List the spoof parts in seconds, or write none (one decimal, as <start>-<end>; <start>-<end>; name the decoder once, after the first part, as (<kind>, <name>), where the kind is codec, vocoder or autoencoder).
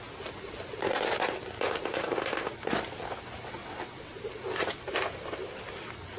3.6-4.2 (vocoder, WaveNeXt)